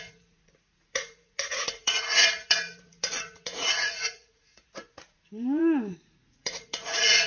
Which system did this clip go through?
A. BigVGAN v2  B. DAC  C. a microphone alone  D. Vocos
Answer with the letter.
D